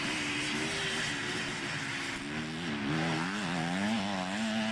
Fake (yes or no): no